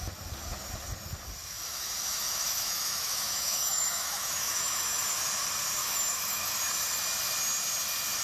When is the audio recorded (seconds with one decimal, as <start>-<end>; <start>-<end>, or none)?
0.0-1.4; 5.0-5.8; 6.6-8.2